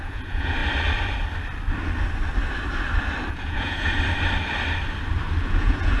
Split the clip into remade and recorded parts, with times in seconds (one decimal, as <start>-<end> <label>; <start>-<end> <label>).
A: 0.0-0.6 remade; 0.6-3.3 recorded; 3.3-3.9 remade; 3.9-5.4 recorded; 5.4-6.0 remade

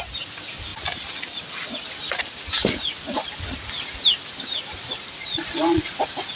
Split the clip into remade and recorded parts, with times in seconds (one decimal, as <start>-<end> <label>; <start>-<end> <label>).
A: 0.0-5.2 recorded; 5.2-5.9 remade; 5.9-6.4 recorded

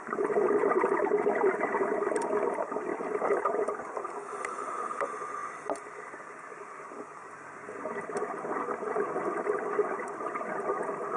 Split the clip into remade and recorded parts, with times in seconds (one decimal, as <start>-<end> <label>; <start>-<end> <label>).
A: 0.0-11.2 recorded

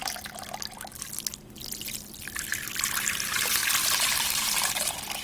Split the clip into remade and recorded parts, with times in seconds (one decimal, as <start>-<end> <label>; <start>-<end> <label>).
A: 0.0-3.1 recorded; 3.1-3.6 remade; 3.6-4.2 recorded; 4.2-5.2 remade

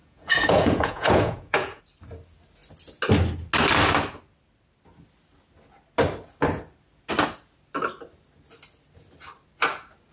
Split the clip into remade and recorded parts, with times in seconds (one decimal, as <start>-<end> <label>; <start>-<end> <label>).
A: 0.0-1.8 remade; 1.8-10.1 recorded

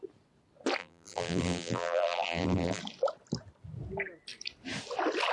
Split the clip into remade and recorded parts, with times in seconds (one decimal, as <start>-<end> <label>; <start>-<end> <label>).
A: 0.0-0.8 recorded; 0.8-2.8 remade; 2.8-5.3 recorded

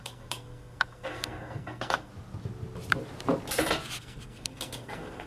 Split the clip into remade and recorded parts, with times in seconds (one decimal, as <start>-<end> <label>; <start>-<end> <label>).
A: 0.0-2.1 remade; 2.1-4.0 recorded; 4.0-5.3 remade

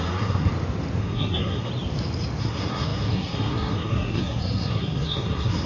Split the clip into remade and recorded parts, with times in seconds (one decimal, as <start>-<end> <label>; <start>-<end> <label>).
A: 0.0-0.5 remade; 0.5-1.0 recorded; 1.0-1.7 remade; 1.7-2.4 recorded; 2.4-5.7 remade